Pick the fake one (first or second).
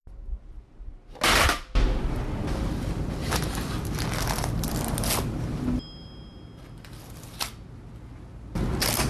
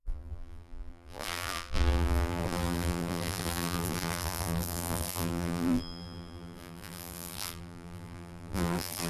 second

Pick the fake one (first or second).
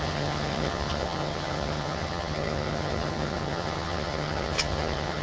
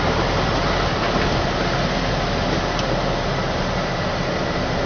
first